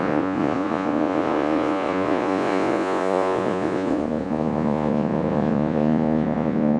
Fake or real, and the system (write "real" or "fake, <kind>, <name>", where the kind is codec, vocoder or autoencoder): fake, vocoder, Vocos